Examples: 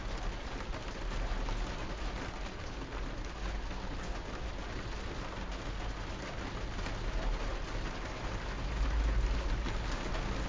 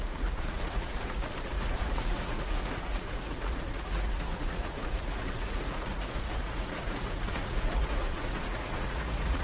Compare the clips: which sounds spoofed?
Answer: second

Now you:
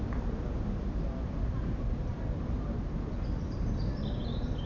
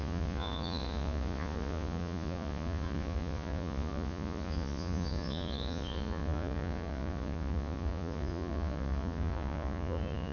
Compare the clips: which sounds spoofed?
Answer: second